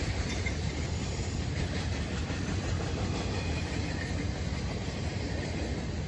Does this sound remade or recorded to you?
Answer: remade